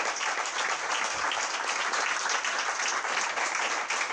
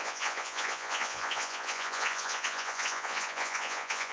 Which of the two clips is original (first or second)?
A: first